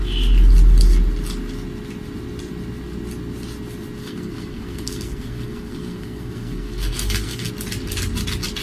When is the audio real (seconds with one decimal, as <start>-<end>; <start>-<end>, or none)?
0.0-4.0; 7.5-8.6